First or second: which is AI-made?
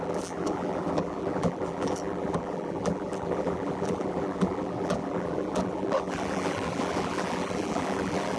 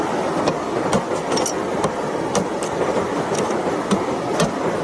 first